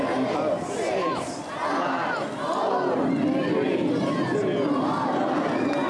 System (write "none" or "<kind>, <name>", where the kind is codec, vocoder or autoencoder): none